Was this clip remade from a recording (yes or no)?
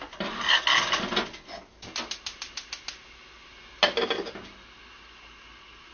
no